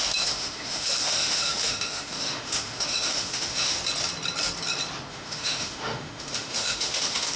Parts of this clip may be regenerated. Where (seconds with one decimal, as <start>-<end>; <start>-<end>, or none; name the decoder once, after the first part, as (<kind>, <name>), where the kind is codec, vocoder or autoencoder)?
0.0-3.8 (autoencoder, DAC-VAE); 5.1-7.4